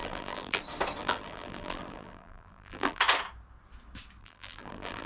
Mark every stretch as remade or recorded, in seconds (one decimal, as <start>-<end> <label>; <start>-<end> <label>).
0.0-0.6 remade; 0.6-1.0 recorded; 1.0-3.0 remade; 3.0-4.2 recorded; 4.2-5.1 remade